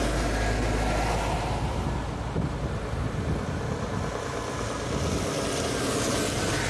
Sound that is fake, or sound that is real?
real